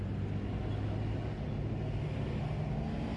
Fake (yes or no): no